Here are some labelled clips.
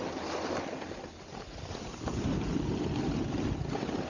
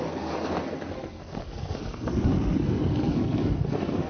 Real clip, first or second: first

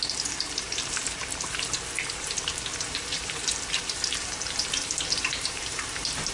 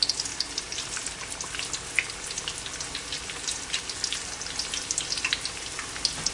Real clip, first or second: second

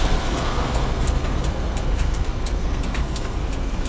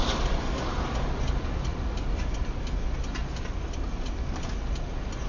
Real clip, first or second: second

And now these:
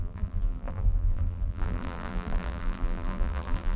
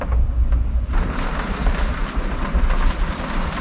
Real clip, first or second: second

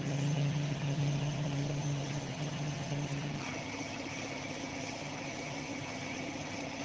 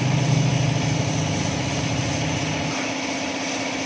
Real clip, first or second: second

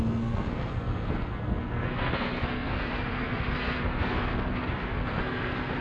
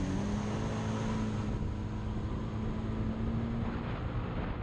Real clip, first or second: second